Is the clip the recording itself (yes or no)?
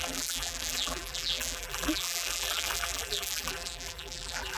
no